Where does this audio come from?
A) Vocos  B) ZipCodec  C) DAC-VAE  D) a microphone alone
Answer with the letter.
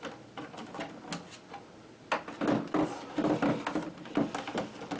D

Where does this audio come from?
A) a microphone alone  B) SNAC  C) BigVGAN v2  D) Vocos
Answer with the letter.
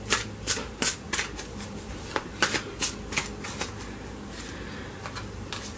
A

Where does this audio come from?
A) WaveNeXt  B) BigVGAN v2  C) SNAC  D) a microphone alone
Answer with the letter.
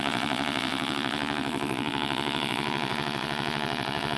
A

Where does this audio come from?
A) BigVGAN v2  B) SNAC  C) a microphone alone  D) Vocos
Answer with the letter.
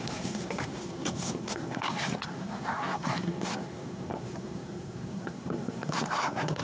B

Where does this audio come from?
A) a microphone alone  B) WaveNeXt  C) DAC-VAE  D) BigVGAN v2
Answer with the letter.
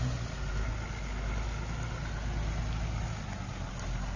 A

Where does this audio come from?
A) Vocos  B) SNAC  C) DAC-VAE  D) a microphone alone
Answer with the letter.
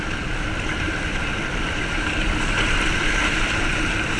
D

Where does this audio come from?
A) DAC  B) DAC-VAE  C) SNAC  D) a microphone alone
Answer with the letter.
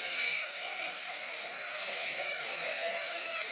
A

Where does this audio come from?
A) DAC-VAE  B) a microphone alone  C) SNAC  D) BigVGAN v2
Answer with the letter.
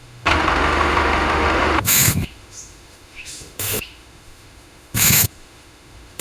A